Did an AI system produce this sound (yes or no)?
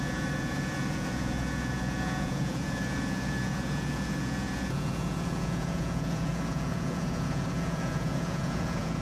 yes